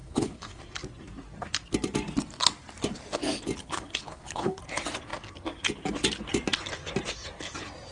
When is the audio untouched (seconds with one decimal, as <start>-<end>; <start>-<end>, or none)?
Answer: 0.6-3.6; 4.6-7.9